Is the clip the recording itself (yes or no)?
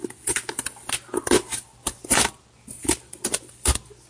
yes